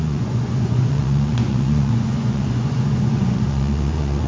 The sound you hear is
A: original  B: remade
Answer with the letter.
B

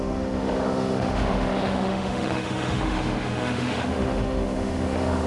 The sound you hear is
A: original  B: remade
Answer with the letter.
B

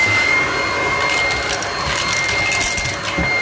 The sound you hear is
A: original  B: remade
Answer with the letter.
A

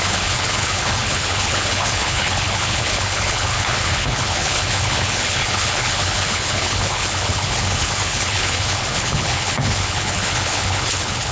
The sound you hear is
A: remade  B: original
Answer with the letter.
A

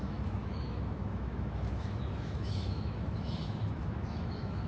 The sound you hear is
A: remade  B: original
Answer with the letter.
A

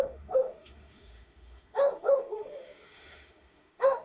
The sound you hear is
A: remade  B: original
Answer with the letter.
A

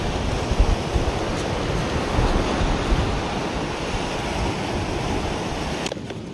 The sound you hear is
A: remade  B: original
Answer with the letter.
B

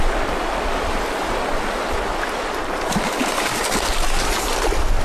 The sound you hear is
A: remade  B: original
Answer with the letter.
B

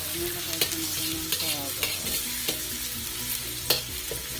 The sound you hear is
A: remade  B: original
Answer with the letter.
B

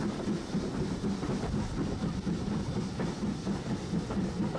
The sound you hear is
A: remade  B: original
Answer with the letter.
B